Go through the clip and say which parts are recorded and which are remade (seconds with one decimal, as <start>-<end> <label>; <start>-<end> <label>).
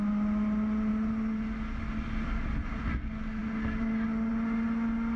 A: 0.0-5.2 recorded